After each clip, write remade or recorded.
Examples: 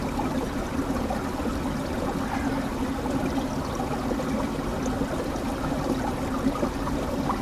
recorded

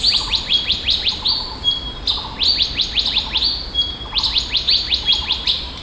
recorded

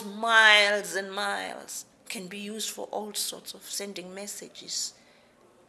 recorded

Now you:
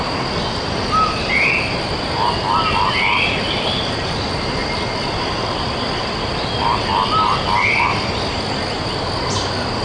recorded